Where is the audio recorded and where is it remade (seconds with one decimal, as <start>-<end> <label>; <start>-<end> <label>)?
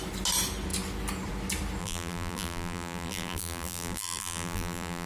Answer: 0.0-1.8 recorded; 1.8-5.1 remade